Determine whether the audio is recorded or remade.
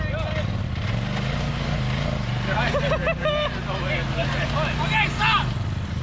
recorded